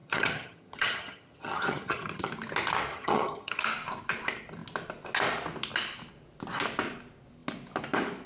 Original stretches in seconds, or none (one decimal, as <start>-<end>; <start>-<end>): 2.3-2.9; 3.6-8.3